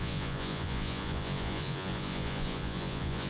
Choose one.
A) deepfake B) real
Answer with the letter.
A